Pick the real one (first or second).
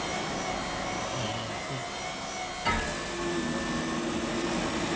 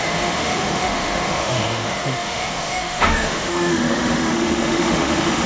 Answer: first